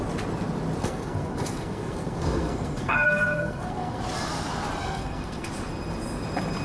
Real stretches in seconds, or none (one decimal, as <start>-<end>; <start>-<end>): 0.0-0.8; 4.0-4.8; 5.5-6.6